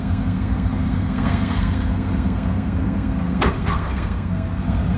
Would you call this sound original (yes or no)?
no